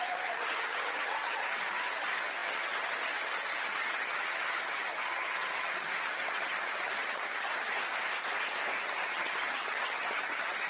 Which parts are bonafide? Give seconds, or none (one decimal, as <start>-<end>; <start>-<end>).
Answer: 7.5-8.8